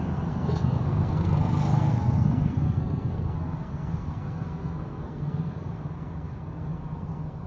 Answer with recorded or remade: remade